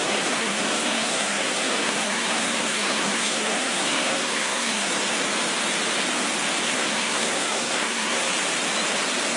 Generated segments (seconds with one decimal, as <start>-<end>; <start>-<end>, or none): 0.0-4.9; 6.6-8.3